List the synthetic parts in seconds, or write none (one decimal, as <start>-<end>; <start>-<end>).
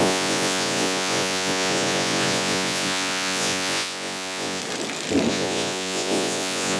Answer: 0.0-4.6; 5.3-6.8